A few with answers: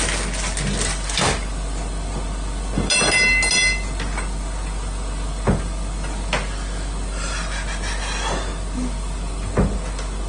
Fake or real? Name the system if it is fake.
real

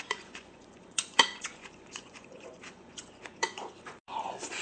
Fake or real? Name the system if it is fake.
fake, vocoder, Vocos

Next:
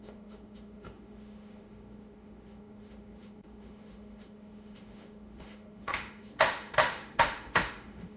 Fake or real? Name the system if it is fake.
fake, autoencoder, DAC-VAE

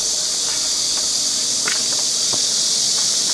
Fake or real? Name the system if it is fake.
real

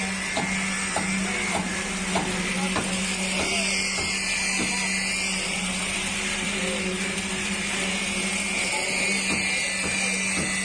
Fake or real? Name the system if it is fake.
real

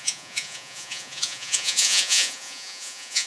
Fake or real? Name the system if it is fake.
fake, vocoder, Vocos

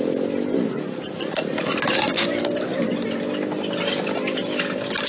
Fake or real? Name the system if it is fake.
real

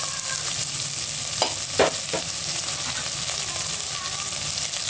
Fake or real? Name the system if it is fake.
real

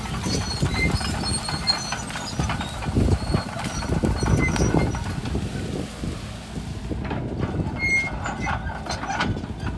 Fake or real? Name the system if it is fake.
real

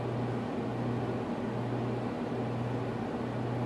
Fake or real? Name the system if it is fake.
real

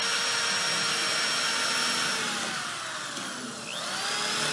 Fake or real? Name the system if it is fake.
real